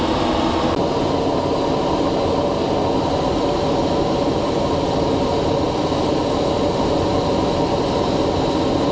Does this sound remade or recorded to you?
recorded